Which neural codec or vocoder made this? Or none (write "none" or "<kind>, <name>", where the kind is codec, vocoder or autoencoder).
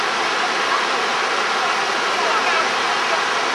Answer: none